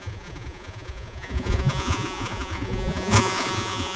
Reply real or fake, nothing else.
fake